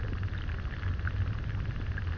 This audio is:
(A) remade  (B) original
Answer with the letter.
B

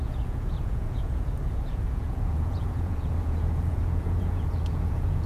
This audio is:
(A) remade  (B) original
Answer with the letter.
A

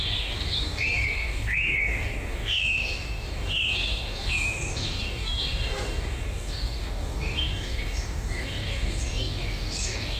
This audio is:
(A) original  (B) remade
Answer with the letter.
B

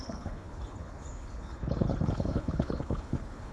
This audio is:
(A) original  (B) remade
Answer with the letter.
B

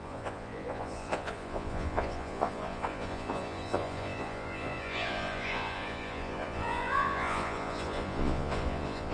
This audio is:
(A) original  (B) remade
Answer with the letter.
B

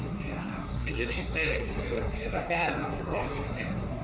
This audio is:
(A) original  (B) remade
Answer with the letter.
B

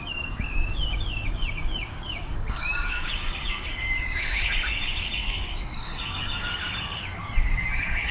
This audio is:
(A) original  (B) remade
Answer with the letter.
B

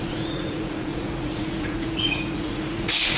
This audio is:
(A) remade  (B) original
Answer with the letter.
A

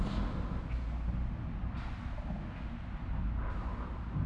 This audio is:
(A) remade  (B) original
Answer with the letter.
B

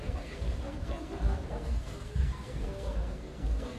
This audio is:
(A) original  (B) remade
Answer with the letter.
B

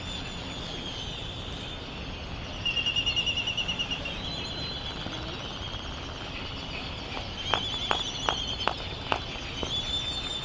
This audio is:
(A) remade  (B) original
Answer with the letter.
B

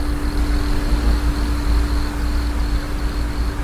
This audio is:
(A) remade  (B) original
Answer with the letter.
B